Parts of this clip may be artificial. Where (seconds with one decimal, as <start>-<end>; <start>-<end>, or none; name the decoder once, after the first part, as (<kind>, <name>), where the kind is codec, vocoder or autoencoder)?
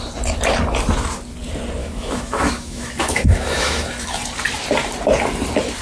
1.8-4.2 (autoencoder, DAC-VAE)